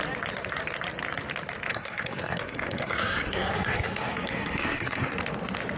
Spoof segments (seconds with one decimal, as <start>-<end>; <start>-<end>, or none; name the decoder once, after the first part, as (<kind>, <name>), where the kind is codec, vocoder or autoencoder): 1.7-5.2 (codec, SNAC)